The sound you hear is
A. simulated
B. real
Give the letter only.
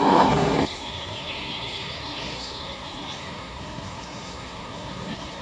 A